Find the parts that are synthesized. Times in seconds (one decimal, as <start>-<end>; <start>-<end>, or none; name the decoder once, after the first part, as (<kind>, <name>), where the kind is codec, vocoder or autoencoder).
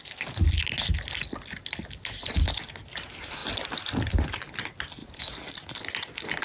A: 5.0-5.8 (vocoder, BigVGAN v2)